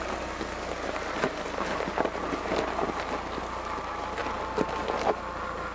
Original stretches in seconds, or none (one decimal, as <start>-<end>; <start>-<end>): 0.0-5.7